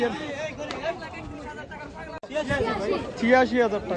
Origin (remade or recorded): recorded